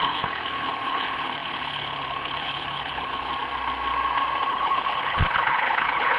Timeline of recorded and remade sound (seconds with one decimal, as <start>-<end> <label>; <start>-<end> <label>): 0.0-3.3 remade; 3.3-4.5 recorded; 4.5-6.2 remade